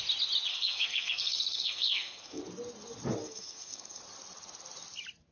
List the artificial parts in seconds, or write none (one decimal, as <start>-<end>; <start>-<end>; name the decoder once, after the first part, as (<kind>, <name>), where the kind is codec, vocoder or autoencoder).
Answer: 0.5-2.4 (codec, SNAC); 3.2-4.0